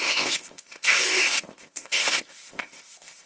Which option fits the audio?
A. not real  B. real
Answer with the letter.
A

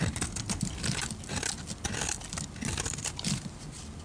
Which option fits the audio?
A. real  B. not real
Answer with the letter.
A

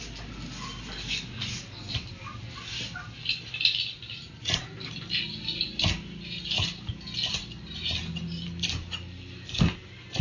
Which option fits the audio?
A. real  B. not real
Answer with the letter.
A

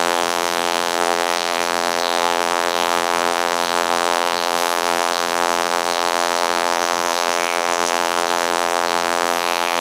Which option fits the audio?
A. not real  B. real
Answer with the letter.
A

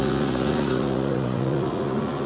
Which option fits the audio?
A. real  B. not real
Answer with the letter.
B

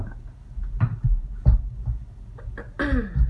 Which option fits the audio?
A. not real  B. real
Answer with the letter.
B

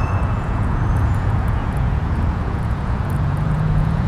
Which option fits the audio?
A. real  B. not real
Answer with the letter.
B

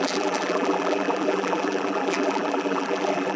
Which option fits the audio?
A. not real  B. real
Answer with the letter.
A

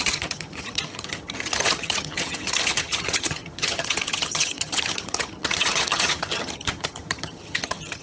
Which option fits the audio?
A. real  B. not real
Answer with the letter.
B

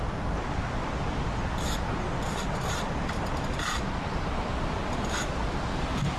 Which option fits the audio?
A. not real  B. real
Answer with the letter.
B